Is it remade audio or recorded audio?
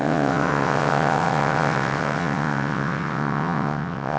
remade